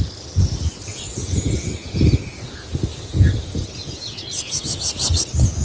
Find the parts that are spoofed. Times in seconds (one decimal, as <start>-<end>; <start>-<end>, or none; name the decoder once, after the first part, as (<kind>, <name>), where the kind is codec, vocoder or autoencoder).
0.9-2.0 (vocoder, Vocos); 3.1-4.6